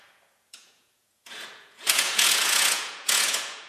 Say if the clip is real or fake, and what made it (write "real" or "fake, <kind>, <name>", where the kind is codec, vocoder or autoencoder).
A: fake, vocoder, Vocos